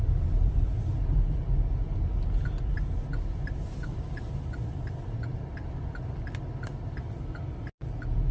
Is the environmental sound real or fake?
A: real